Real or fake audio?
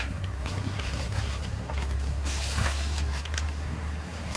fake